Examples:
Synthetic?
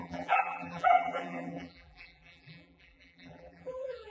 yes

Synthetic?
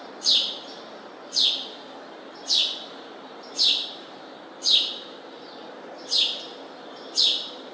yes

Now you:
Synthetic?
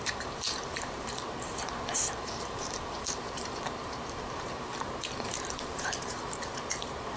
yes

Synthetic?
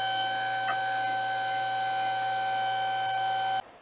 no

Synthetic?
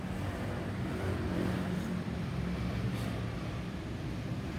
yes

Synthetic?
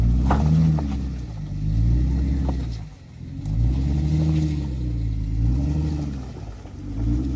no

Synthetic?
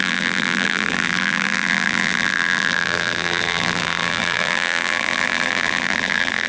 yes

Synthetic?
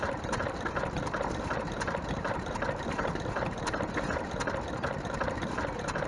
yes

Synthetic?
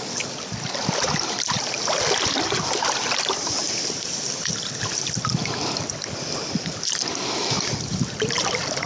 yes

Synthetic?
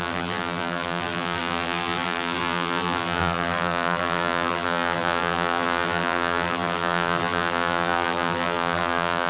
yes